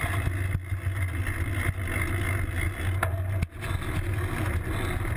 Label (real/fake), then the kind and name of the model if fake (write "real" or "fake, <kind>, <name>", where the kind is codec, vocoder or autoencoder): real